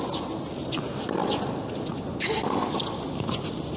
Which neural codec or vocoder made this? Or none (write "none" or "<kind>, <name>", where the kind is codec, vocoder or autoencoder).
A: none